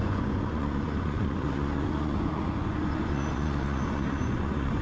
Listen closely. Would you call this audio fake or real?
fake